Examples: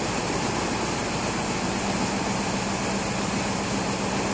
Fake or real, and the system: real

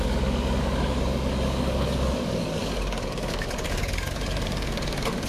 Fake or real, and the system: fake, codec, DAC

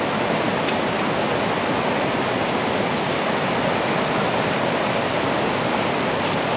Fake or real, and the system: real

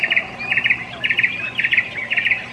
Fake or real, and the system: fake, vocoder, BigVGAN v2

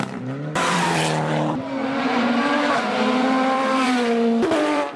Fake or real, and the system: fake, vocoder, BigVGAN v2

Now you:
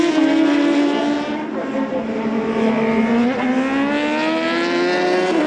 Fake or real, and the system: real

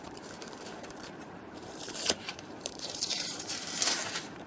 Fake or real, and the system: fake, vocoder, BigVGAN v2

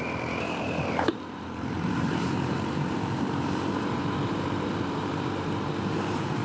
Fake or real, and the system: fake, vocoder, BigVGAN v2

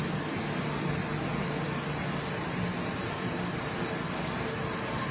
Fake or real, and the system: real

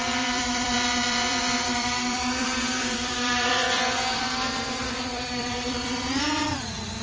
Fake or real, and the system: fake, vocoder, BigVGAN v2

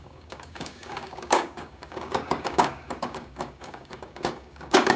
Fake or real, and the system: fake, codec, DAC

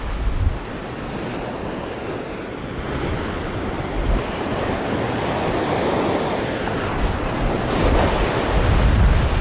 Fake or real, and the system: real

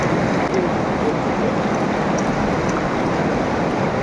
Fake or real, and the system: real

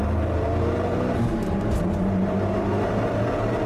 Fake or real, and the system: fake, vocoder, BigVGAN v2